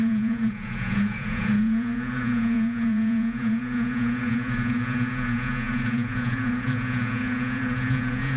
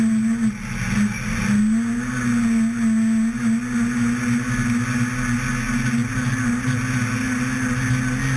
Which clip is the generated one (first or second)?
first